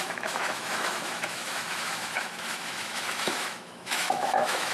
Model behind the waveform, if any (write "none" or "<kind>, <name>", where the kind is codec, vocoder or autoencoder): autoencoder, DAC-VAE